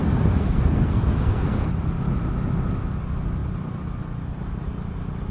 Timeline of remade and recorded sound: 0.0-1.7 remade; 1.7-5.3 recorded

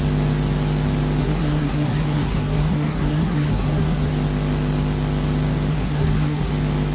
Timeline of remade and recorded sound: 0.0-1.2 recorded; 1.2-4.1 remade; 4.1-5.7 recorded; 5.7-6.5 remade; 6.5-6.9 recorded

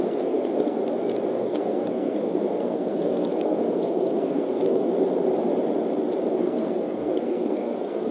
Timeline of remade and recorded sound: 0.0-0.8 remade; 0.8-1.3 recorded; 1.3-4.9 remade; 4.9-6.3 recorded; 6.3-8.1 remade

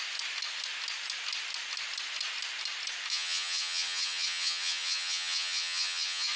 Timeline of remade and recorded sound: 0.0-3.1 recorded; 3.1-6.4 remade

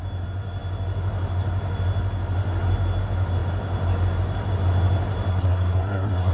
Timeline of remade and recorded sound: 0.0-5.3 recorded; 5.3-6.3 remade

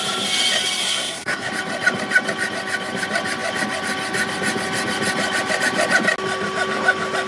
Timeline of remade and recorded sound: 0.0-0.8 recorded; 0.8-1.5 remade; 1.5-7.3 recorded